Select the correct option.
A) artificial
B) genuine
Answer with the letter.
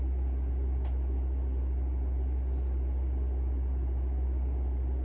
B